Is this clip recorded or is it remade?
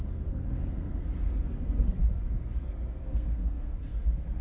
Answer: remade